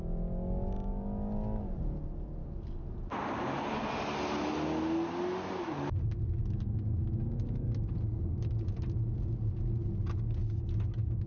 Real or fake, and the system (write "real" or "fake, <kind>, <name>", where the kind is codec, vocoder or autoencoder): real